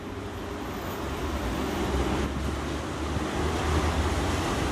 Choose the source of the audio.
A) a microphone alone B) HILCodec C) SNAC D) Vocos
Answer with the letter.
A